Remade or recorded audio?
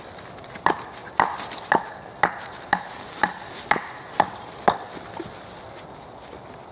recorded